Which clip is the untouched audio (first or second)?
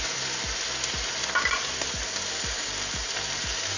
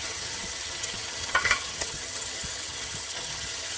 first